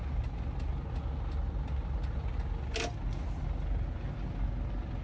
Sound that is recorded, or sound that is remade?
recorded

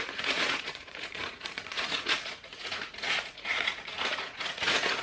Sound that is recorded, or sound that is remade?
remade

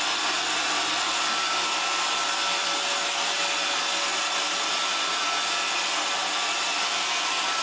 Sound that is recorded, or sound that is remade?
recorded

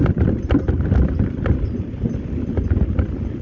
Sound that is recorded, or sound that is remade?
recorded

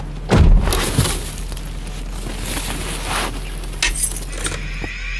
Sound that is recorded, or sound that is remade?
recorded